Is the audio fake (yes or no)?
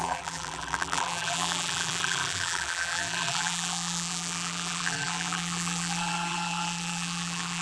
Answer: yes